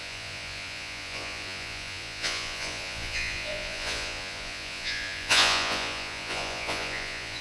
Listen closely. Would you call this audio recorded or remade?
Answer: remade